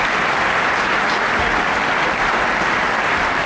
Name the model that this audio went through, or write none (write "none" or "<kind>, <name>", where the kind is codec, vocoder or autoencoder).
none